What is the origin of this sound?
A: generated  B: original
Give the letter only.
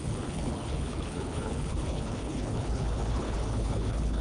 A